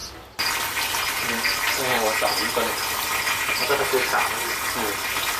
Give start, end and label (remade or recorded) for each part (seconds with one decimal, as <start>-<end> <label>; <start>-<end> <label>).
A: 0.0-5.4 recorded